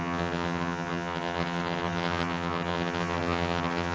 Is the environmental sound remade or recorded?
remade